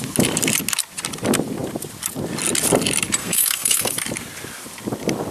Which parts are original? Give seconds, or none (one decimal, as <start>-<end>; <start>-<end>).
0.0-3.2; 3.9-5.3